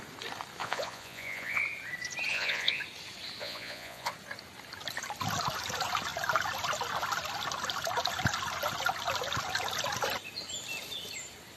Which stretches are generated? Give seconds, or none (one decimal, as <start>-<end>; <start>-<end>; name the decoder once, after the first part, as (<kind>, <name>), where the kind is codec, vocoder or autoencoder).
0.6-1.6 (vocoder, Vocos); 2.3-2.8; 3.4-4.1